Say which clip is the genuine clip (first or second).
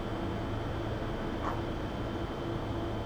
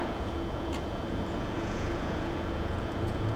first